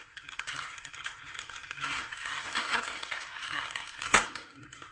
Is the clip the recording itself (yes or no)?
no